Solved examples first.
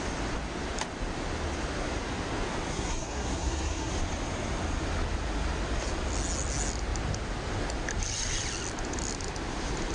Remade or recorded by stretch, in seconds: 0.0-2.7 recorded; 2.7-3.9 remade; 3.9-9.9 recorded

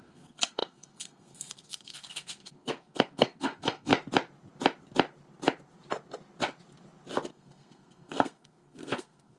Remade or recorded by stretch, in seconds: 0.0-3.9 remade; 3.9-7.3 recorded; 7.3-9.4 remade

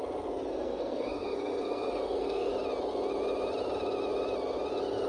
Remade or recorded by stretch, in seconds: 0.0-0.5 recorded; 0.5-2.5 remade; 2.5-5.1 recorded